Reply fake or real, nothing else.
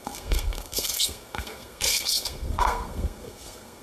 fake